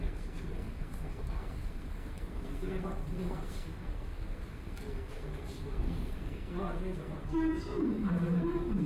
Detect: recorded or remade remade